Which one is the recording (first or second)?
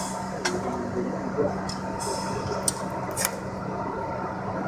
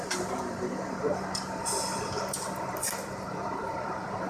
first